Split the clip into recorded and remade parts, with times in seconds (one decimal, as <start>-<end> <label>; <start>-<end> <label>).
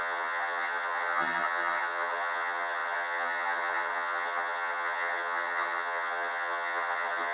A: 0.0-7.3 remade